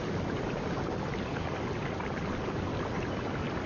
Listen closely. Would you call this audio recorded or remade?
recorded